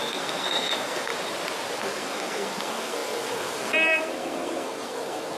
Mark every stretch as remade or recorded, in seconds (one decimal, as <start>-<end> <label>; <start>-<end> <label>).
0.0-1.1 remade; 1.1-1.8 recorded; 1.8-5.4 remade